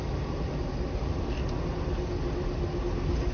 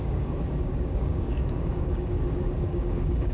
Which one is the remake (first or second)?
second